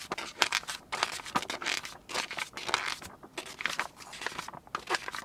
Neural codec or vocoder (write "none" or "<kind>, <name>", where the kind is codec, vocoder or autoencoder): none